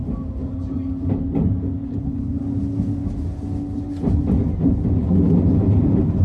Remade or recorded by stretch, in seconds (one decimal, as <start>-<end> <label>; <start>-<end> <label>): 0.0-2.0 recorded; 2.0-2.4 remade; 2.4-6.2 recorded